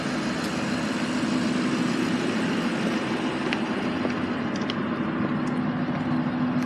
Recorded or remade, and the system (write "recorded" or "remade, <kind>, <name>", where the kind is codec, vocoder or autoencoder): recorded